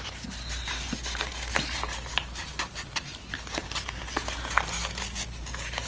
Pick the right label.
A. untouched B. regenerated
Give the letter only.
A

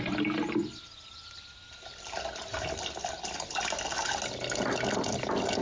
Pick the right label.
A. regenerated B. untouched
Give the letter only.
B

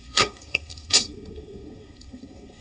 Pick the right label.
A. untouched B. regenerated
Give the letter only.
B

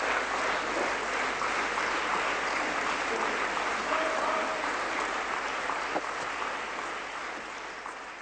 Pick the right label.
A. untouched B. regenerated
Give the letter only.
A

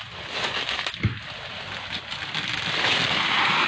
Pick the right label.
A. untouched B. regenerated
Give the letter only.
A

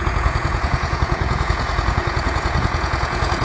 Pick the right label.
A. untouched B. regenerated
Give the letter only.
B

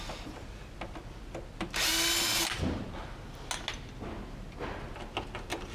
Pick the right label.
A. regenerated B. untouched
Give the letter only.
B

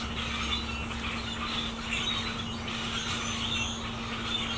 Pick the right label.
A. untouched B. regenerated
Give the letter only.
A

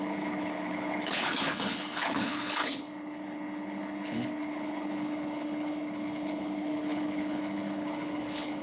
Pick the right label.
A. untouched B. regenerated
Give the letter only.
B